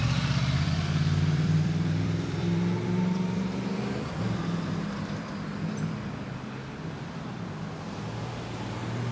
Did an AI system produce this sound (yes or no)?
yes